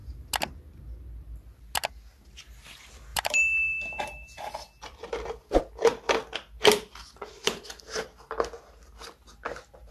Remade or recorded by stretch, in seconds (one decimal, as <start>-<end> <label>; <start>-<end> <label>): 0.0-3.1 recorded; 3.1-5.6 remade; 5.6-9.9 recorded